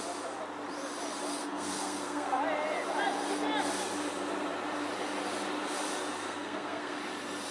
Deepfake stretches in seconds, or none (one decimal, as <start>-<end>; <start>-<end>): 1.4-2.4; 6.2-7.0